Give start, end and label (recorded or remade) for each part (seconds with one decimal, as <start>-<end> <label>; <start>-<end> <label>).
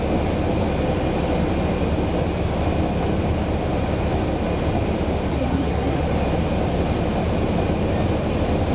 0.0-5.3 recorded; 5.3-6.0 remade; 6.0-8.7 recorded